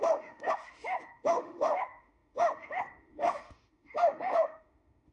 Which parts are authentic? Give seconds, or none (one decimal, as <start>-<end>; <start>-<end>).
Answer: none